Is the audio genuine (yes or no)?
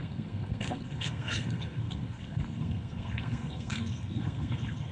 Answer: no